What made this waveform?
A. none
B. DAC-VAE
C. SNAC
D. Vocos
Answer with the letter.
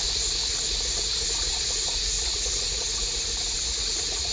D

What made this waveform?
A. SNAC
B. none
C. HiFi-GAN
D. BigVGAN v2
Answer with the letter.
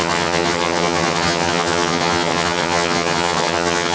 C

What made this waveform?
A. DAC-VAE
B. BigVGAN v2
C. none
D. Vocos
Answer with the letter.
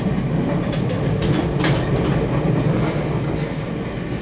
C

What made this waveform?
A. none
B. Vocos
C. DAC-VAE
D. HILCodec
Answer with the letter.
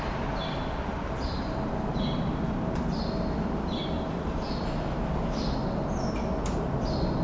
A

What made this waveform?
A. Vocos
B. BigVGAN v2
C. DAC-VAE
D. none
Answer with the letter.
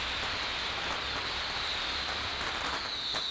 D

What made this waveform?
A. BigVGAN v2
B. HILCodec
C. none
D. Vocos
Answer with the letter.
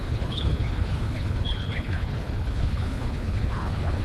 B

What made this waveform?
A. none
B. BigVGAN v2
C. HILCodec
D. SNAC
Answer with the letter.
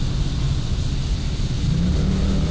A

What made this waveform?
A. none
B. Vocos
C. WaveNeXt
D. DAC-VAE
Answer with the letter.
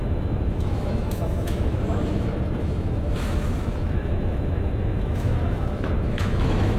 D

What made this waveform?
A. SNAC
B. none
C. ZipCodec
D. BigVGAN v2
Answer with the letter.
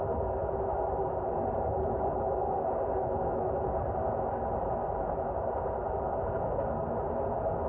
B